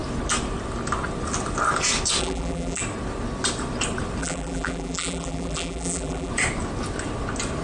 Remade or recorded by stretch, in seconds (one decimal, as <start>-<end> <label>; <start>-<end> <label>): 0.0-2.2 recorded; 2.2-2.8 remade; 2.8-4.2 recorded; 4.2-6.3 remade; 6.3-7.6 recorded